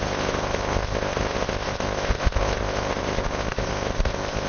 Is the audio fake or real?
fake